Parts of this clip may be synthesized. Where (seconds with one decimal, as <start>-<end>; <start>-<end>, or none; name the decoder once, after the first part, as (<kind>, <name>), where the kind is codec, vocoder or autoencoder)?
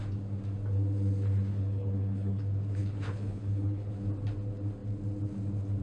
1.5-2.4 (codec, HILCodec); 2.8-3.9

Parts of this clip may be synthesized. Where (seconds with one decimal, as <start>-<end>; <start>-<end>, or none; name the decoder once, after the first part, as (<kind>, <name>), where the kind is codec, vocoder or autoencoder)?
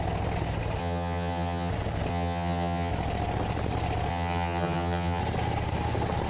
0.8-1.7 (vocoder, HiFi-GAN); 2.1-2.9; 4.1-5.2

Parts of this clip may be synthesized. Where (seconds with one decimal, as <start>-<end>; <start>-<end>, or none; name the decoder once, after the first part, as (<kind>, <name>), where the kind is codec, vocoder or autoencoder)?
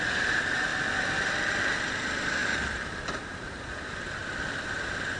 0.0-4.2 (vocoder, BigVGAN v2)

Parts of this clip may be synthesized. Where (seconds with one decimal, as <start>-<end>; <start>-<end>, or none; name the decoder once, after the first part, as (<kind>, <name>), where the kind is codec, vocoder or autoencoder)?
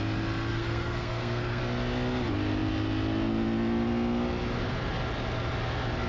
0.5-1.6 (codec, SNAC)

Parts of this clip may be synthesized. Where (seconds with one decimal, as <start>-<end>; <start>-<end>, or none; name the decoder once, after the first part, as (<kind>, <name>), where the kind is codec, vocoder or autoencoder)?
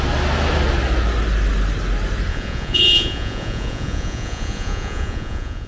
2.3-5.7 (vocoder, Vocos)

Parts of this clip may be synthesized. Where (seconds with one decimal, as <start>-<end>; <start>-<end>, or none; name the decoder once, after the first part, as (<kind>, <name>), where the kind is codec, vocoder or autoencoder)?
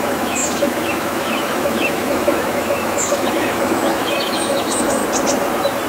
0.0-5.0 (autoencoder, DAC-VAE)